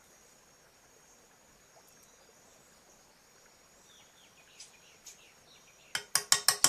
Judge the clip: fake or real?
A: real